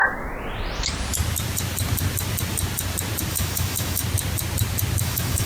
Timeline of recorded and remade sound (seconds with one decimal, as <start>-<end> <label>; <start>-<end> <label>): 0.0-3.3 recorded; 3.3-4.0 remade; 4.0-5.0 recorded; 5.0-5.5 remade